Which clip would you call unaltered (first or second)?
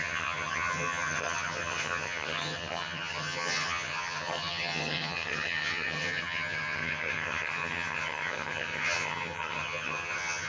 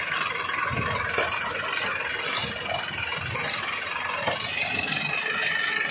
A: second